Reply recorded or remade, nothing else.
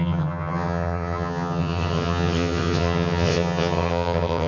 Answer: remade